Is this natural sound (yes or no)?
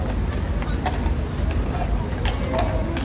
yes